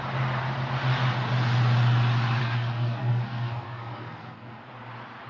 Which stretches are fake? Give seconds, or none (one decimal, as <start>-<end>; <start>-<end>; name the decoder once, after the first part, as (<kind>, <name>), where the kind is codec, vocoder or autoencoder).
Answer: 2.4-4.6 (codec, SNAC)